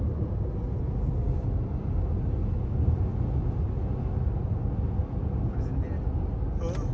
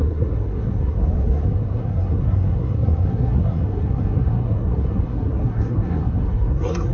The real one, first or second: first